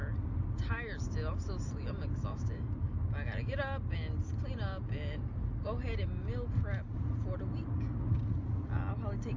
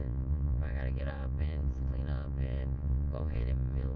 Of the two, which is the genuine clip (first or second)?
first